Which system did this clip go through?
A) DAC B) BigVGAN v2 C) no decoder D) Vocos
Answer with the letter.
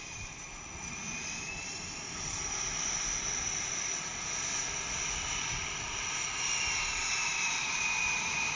C